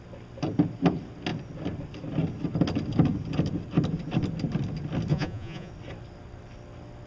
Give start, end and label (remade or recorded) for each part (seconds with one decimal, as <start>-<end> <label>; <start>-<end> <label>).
0.0-5.1 recorded; 5.1-5.7 remade; 5.7-7.1 recorded

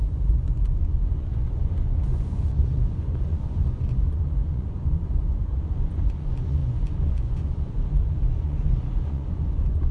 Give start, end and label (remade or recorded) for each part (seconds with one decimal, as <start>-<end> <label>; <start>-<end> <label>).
0.0-9.9 remade

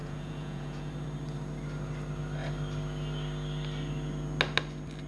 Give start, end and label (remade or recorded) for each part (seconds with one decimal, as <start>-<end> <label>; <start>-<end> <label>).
0.0-0.9 remade; 0.9-5.1 recorded

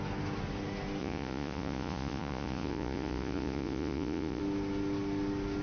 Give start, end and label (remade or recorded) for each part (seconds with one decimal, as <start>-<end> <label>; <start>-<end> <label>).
0.0-1.0 recorded; 1.0-4.4 remade; 4.4-5.6 recorded

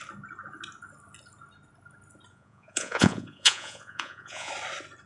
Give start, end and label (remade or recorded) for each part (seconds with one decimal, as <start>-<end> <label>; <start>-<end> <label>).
0.0-2.3 recorded; 2.3-4.5 remade; 4.5-5.1 recorded

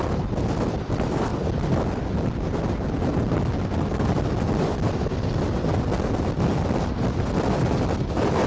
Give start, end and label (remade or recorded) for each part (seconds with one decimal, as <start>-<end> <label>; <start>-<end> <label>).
0.0-8.5 recorded

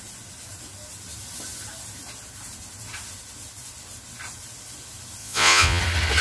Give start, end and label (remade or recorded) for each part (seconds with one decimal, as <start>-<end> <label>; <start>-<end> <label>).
0.0-5.2 recorded; 5.2-5.8 remade; 5.8-6.2 recorded

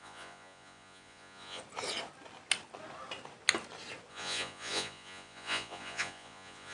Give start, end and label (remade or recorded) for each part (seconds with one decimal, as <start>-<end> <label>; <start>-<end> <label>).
0.0-1.6 remade; 1.6-4.1 recorded; 4.1-6.7 remade